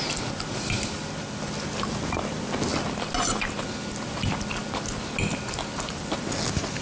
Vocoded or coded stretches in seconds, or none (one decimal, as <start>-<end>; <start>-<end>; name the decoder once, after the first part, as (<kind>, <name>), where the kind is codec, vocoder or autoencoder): none